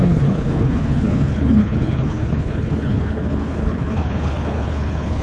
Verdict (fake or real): fake